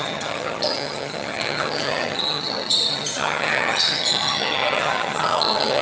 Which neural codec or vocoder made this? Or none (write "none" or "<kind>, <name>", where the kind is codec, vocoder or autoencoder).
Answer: vocoder, HiFi-GAN